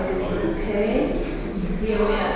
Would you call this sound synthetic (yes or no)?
no